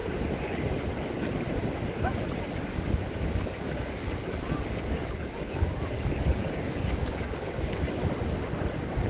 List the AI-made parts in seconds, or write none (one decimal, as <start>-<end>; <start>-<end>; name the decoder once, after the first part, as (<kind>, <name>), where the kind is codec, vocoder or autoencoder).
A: 2.6-7.8 (codec, DAC)

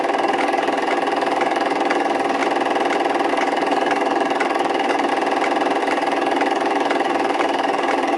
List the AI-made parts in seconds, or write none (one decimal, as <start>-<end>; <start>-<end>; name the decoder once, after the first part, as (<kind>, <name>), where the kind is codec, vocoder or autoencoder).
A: 0.0-2.4 (codec, DAC); 3.3-5.1; 5.8-8.2

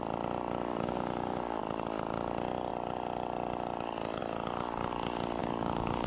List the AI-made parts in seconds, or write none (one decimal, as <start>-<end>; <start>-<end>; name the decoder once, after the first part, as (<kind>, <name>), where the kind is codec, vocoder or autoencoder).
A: 0.7-1.6 (codec, DAC); 5.4-6.1

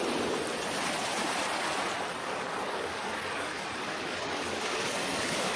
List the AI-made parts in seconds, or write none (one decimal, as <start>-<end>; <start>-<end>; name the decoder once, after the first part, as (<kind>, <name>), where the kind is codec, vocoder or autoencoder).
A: 2.2-5.6 (codec, DAC)

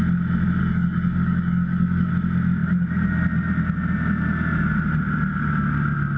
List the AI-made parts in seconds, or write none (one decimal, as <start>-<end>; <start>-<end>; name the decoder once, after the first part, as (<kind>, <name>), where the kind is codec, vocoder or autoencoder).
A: 0.6-2.1 (codec, DAC)

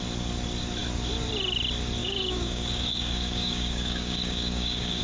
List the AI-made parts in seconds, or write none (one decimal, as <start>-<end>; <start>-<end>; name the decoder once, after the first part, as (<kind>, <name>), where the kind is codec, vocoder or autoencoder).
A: 2.0-5.0 (codec, DAC)